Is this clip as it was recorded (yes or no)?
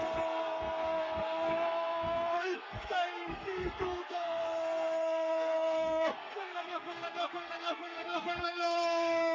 no